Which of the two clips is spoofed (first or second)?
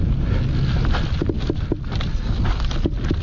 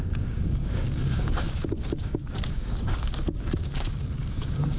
second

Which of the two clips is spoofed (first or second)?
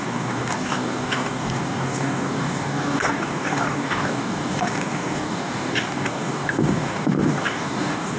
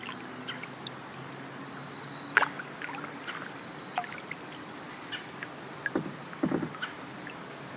first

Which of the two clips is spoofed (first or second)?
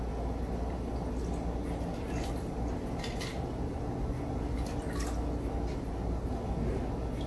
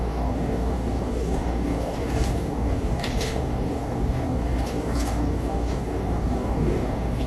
second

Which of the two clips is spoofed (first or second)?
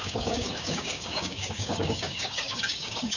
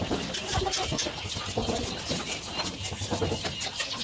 first